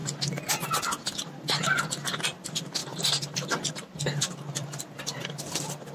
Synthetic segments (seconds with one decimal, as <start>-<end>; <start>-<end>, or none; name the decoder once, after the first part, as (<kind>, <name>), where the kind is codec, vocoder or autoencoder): none

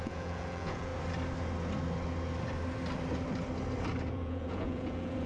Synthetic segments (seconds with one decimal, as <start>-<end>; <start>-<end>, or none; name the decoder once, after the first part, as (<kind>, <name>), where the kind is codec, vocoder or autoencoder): 0.0-0.9 (vocoder, Vocos); 4.1-5.3

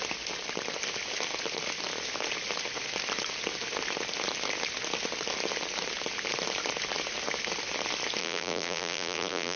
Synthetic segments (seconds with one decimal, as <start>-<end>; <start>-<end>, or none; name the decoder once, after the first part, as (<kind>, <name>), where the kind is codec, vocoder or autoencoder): 8.2-9.6 (vocoder, BigVGAN v2)

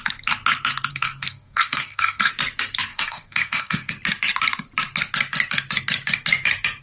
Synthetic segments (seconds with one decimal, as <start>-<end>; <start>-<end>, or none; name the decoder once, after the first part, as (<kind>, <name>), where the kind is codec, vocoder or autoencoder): 0.9-2.3 (codec, SNAC); 2.9-3.9